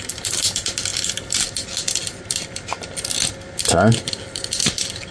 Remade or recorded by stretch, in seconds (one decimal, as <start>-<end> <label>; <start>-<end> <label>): 0.0-5.1 recorded

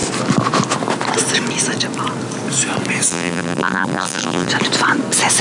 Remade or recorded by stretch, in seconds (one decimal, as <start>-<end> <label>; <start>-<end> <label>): 0.0-3.1 recorded; 3.1-4.5 remade; 4.5-5.4 recorded

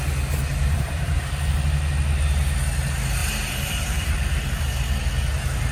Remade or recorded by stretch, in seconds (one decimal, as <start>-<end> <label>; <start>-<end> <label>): 0.0-0.5 recorded; 0.5-1.3 remade; 1.3-3.2 recorded; 3.2-4.1 remade; 4.1-5.7 recorded

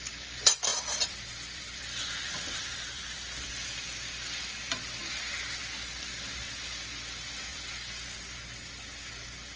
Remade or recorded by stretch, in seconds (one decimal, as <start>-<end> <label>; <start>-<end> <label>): 0.0-0.7 recorded; 0.7-3.5 remade; 3.5-7.5 recorded; 7.5-8.2 remade; 8.2-9.6 recorded

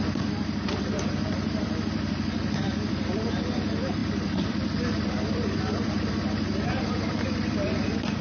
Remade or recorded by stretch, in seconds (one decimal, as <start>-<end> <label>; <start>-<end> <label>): 0.0-8.2 remade

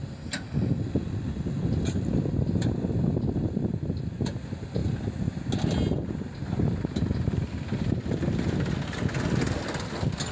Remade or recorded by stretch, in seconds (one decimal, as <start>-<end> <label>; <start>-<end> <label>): 0.0-10.3 recorded

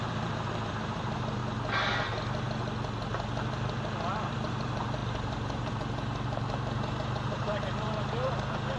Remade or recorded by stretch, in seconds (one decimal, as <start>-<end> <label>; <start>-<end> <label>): 0.0-1.4 remade; 1.4-4.3 recorded; 4.3-8.8 remade